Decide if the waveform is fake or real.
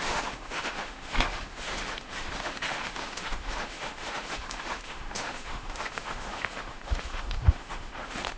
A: fake